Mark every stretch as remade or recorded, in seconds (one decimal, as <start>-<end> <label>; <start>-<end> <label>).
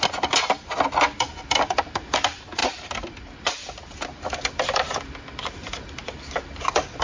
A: 0.0-7.0 remade